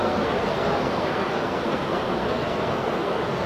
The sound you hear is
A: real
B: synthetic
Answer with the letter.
B